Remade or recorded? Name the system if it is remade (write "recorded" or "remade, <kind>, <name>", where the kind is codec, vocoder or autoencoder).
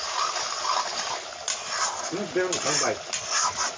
recorded